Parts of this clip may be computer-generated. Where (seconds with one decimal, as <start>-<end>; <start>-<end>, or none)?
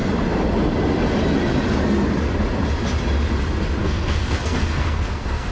3.8-5.5